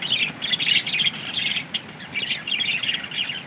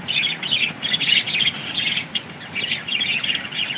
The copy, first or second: second